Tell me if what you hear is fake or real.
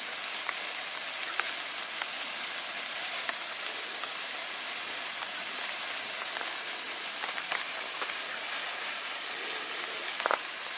real